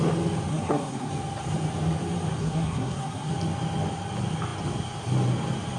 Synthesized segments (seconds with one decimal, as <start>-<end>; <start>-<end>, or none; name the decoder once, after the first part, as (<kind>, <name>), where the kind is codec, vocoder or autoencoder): 0.5-1.1 (codec, SNAC); 2.4-3.3